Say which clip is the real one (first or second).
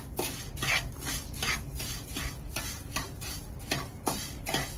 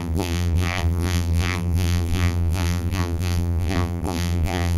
first